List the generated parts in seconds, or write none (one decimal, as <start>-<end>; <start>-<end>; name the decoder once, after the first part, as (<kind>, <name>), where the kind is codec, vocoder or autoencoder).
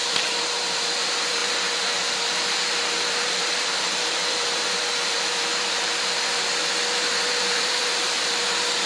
0.0-8.9 (vocoder, BigVGAN v2)